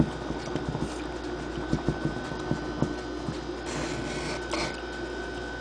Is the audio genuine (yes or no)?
yes